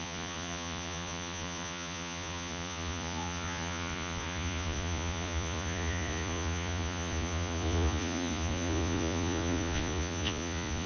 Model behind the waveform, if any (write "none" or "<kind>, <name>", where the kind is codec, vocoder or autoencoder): vocoder, Vocos